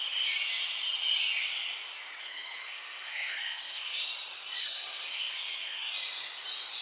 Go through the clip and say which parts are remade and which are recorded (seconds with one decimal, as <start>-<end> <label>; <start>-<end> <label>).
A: 0.0-2.2 recorded; 2.2-4.0 remade; 4.0-4.6 recorded; 4.6-5.9 remade; 5.9-6.8 recorded